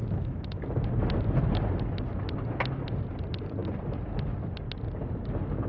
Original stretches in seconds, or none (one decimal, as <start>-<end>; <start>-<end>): 0.0-5.7